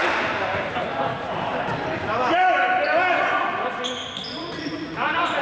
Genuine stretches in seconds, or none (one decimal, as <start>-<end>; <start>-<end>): 0.7-5.4

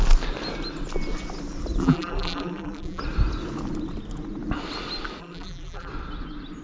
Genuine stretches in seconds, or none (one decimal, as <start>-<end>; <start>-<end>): 0.0-1.8; 3.0-5.2; 5.9-6.6

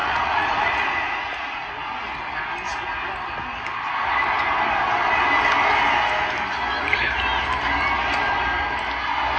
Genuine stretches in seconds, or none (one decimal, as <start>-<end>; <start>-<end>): 1.7-9.4

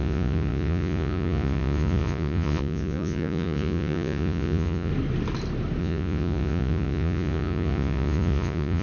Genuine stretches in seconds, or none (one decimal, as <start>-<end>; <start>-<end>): 4.9-5.8

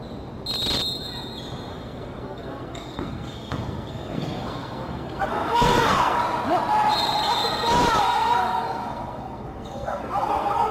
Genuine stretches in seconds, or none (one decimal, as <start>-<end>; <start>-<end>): 0.0-1.7; 6.2-8.0

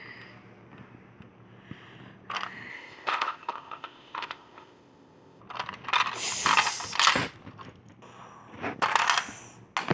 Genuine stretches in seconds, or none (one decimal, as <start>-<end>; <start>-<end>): 0.0-2.7; 5.4-9.9

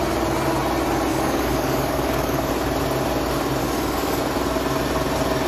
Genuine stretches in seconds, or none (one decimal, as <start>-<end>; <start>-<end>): 0.0-1.1; 2.5-3.6; 4.2-5.5